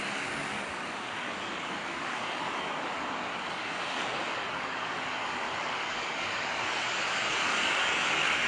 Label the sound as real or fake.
fake